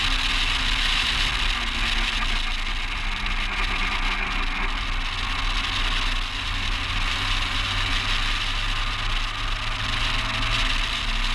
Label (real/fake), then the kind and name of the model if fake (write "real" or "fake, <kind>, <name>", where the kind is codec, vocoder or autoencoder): real